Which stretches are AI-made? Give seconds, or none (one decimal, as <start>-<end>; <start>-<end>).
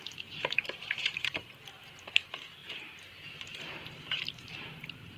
0.8-1.5; 2.6-4.5